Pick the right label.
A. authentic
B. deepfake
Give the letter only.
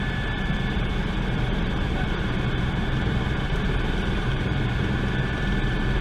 B